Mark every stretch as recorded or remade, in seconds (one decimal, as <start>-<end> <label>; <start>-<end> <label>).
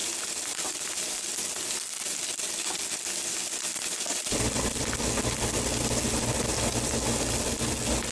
0.0-8.1 recorded